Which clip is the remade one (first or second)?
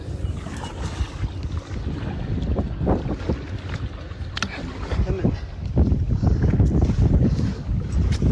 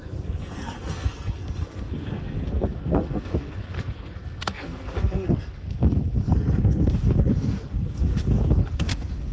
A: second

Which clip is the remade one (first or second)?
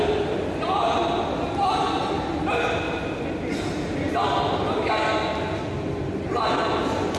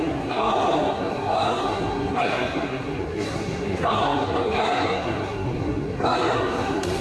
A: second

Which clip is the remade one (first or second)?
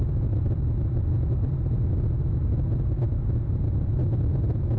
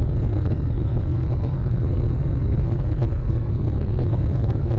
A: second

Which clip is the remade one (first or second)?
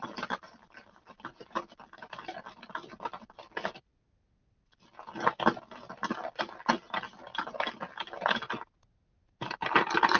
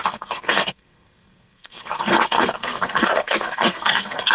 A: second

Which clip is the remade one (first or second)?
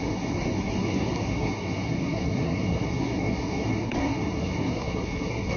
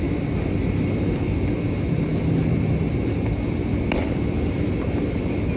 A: first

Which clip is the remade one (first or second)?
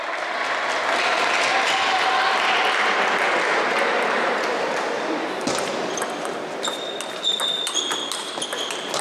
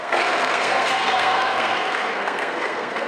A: second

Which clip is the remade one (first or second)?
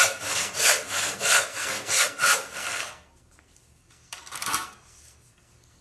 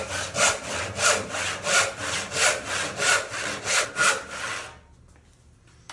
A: first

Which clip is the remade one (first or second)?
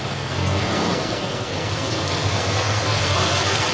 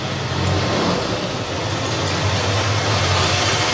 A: first